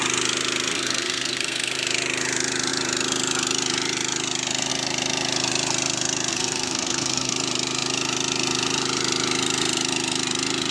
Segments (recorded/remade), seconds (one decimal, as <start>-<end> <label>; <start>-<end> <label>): 0.0-0.7 recorded; 0.7-1.7 remade; 1.7-6.3 recorded; 6.3-7.3 remade; 7.3-10.7 recorded